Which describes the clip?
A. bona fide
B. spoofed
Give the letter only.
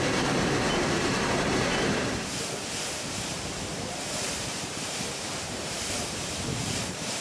B